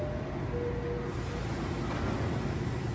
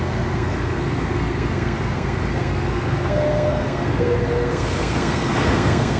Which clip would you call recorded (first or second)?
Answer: first